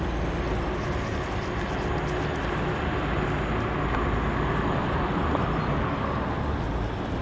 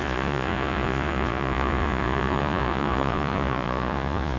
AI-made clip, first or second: second